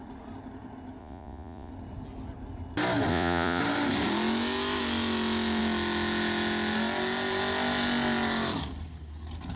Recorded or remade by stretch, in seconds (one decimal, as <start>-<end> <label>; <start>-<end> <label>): 0.0-1.0 recorded; 1.0-1.7 remade; 1.7-3.1 recorded; 3.1-3.6 remade; 3.6-9.6 recorded